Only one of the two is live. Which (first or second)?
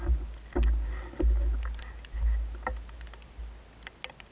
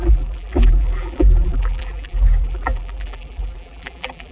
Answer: first